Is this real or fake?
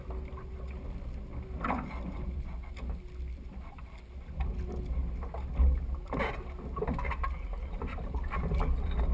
real